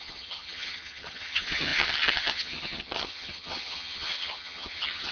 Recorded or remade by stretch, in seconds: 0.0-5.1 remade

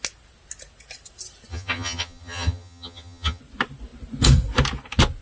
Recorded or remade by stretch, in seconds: 0.0-1.5 recorded; 1.5-3.4 remade; 3.4-5.2 recorded

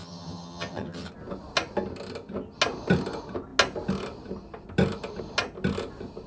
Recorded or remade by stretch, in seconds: 0.0-1.1 remade; 1.1-6.3 recorded

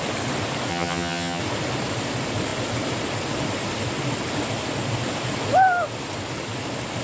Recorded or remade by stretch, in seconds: 0.0-0.7 recorded; 0.7-1.4 remade; 1.4-7.0 recorded

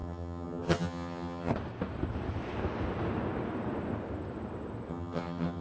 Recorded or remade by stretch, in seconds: 0.0-1.5 remade; 1.5-4.9 recorded; 4.9-5.6 remade